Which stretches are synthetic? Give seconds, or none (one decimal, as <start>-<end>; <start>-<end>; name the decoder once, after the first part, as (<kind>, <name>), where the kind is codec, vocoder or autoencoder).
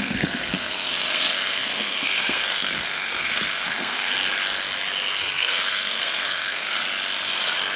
0.0-4.1 (codec, SNAC); 5.2-6.8